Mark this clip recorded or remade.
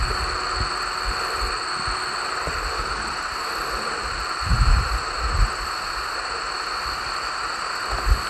recorded